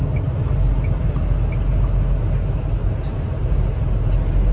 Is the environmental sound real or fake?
real